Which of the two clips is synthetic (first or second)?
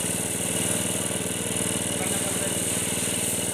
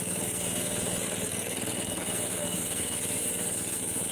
second